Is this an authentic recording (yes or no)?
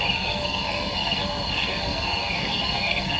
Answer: no